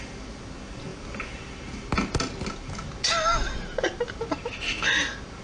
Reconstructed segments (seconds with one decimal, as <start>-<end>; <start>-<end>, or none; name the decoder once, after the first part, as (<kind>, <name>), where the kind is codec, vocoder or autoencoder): none